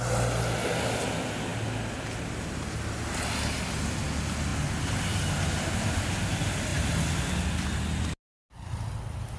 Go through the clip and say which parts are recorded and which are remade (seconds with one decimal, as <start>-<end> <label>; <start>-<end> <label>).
0.0-9.4 recorded

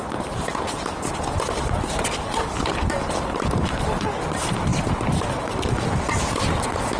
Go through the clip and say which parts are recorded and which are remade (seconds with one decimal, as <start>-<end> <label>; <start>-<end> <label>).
0.0-7.0 remade

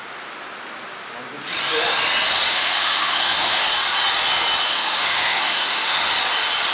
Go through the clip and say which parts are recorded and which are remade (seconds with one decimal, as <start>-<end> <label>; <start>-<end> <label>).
0.0-2.5 recorded; 2.5-3.6 remade; 3.6-4.7 recorded; 4.7-6.1 remade; 6.1-6.7 recorded

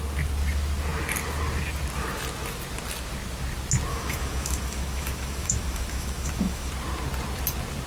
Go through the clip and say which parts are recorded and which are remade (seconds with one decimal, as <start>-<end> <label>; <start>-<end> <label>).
0.0-3.9 recorded; 3.9-6.7 remade; 6.7-7.9 recorded

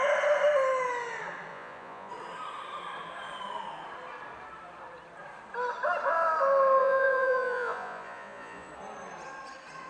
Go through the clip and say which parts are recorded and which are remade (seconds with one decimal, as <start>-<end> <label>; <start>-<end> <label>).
0.0-1.5 recorded; 1.5-2.1 remade; 2.1-6.8 recorded; 6.8-8.7 remade; 8.7-9.9 recorded

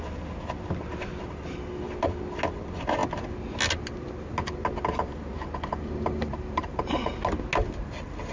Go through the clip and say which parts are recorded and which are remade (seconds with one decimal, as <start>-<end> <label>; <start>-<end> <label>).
0.0-5.3 recorded; 5.3-7.1 remade; 7.1-8.3 recorded

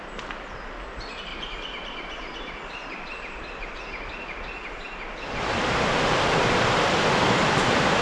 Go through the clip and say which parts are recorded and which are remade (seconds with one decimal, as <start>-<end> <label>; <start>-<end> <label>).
0.0-8.0 recorded